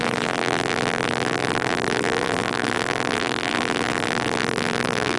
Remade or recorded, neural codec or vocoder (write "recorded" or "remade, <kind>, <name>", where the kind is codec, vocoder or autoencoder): remade, vocoder, BigVGAN v2